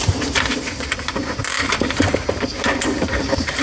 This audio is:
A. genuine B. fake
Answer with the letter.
B